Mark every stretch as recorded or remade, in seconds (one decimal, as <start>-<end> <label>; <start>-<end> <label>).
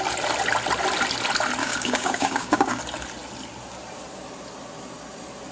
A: 0.0-1.6 recorded; 1.6-2.8 remade; 2.8-5.5 recorded